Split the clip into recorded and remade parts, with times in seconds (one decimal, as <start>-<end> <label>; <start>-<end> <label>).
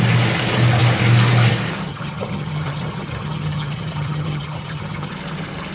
0.0-1.9 recorded; 1.9-5.1 remade; 5.1-5.7 recorded